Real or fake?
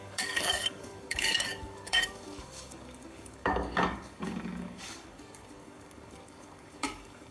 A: fake